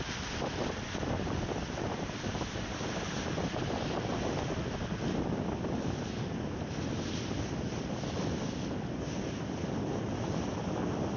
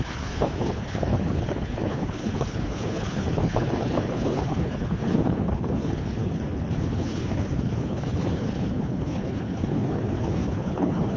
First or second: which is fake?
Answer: second